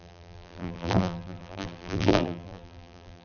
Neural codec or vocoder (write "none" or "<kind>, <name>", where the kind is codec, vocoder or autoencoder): vocoder, BigVGAN v2